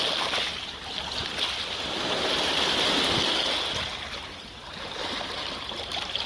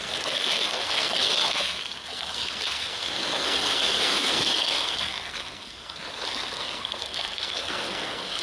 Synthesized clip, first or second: second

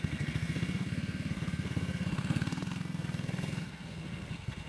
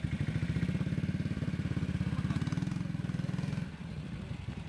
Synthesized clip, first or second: first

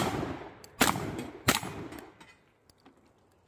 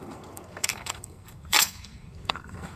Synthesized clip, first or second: second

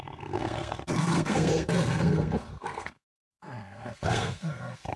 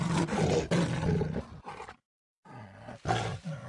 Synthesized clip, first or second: first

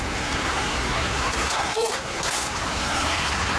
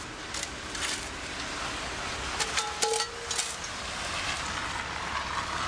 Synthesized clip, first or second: first